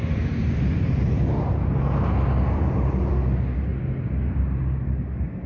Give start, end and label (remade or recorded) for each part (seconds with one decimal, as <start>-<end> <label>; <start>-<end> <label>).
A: 0.0-5.5 recorded